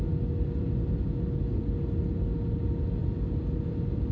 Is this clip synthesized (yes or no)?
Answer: no